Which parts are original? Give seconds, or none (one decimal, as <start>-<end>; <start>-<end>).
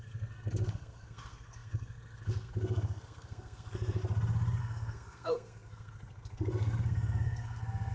4.0-4.6